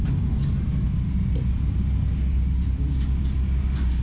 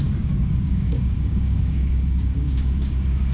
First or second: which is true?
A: first